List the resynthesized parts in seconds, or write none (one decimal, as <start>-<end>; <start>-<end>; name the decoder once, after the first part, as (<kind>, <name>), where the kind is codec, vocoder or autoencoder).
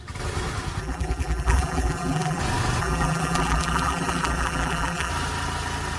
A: 0.8-2.4 (vocoder, BigVGAN v2); 2.8-5.1